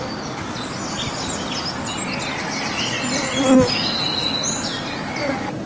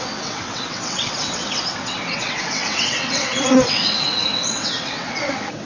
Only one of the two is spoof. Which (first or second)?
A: second